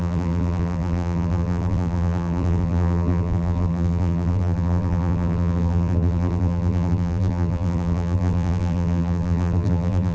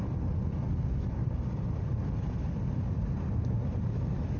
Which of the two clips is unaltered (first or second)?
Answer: second